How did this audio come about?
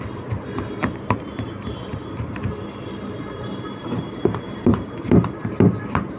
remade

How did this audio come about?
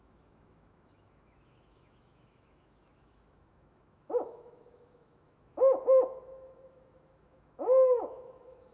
remade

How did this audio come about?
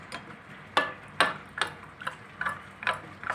recorded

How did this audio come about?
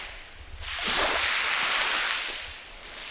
recorded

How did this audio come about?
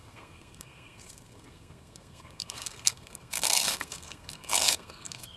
remade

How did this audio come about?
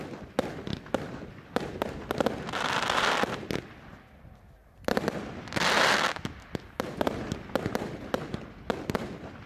recorded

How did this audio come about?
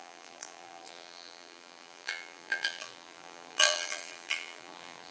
remade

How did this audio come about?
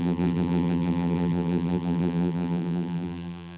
remade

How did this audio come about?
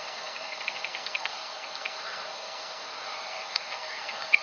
remade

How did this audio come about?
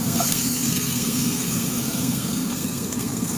remade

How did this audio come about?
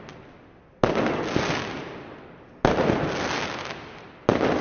recorded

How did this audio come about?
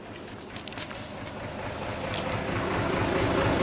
recorded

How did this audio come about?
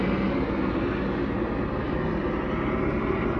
recorded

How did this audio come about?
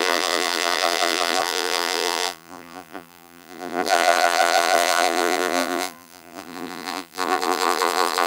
remade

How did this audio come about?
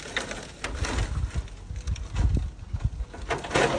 recorded